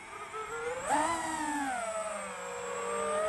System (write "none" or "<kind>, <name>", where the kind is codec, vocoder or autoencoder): none